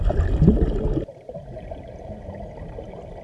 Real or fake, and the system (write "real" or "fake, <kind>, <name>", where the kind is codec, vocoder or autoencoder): real